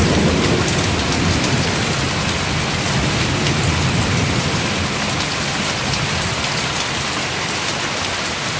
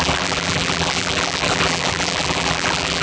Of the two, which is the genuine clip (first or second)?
first